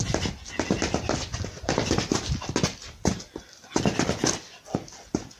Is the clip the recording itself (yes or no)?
yes